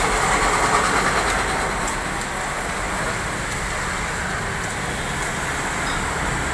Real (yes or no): yes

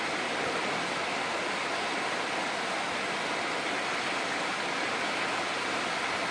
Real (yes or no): yes